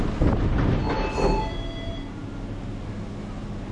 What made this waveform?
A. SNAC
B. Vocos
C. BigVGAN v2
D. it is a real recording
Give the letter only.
D